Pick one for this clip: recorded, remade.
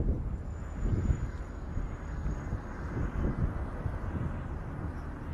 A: remade